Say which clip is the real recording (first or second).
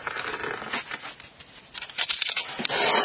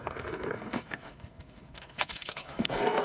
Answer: first